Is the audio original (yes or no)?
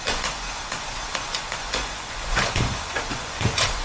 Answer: no